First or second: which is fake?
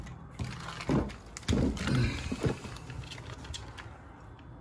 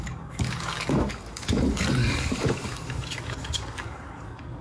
second